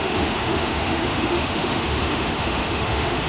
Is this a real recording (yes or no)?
no